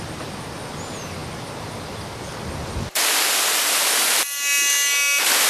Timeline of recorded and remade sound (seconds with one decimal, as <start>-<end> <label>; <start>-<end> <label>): 0.0-5.5 recorded